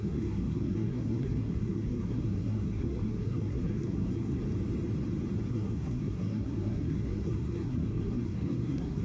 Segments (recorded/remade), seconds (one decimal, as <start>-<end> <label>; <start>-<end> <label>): 0.0-4.4 remade; 4.4-5.5 recorded; 5.5-9.0 remade